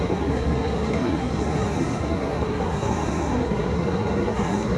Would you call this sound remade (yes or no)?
yes